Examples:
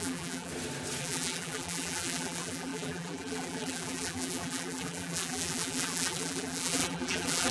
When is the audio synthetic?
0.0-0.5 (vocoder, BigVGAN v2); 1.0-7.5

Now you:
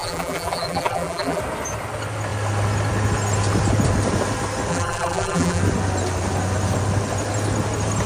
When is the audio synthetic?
0.0-1.4 (vocoder, BigVGAN v2); 4.7-5.6

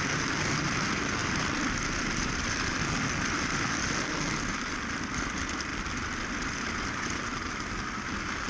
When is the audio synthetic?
1.2-2.5 (vocoder, BigVGAN v2); 5.7-8.0